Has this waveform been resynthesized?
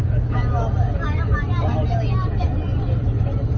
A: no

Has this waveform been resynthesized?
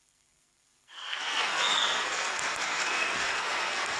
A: yes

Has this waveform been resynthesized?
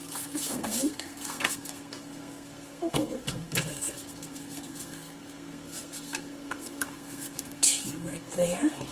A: yes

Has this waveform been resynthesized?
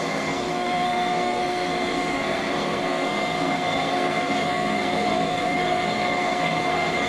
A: yes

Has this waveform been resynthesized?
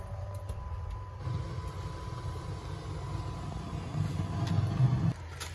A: no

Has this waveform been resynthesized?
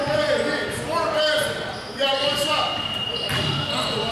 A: no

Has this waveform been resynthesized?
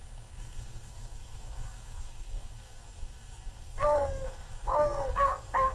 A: yes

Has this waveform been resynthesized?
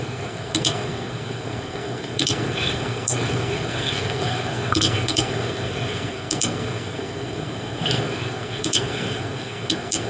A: yes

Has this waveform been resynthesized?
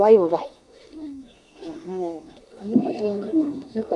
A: yes